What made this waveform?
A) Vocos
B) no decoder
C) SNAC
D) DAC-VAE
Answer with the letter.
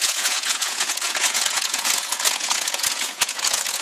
A